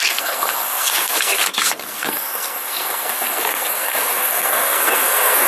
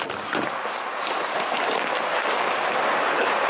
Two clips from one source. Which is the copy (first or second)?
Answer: first